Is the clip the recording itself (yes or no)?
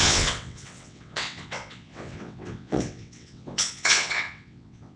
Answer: no